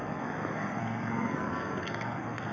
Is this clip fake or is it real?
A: fake